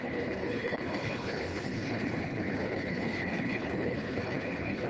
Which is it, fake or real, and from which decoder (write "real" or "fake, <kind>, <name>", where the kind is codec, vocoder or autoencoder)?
fake, codec, HILCodec